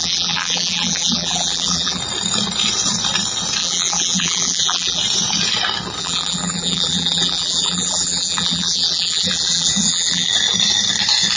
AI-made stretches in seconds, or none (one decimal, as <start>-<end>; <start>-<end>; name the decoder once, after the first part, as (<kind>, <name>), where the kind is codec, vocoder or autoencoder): 0.0-2.0 (vocoder, BigVGAN v2); 3.6-5.0; 6.0-10.3